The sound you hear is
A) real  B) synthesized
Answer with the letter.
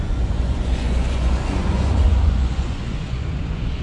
B